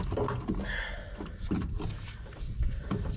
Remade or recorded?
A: recorded